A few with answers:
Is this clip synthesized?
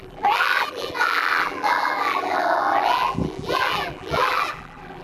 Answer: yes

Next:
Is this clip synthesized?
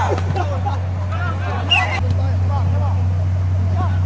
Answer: no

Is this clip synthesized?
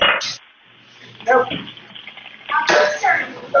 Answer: no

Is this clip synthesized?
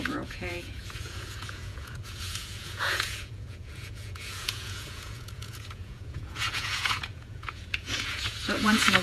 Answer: yes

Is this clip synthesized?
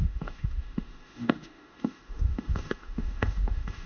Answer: yes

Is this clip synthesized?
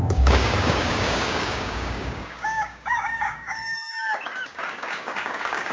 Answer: yes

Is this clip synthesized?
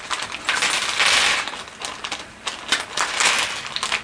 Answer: no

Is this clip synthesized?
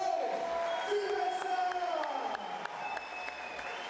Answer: no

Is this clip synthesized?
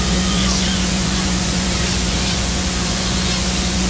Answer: yes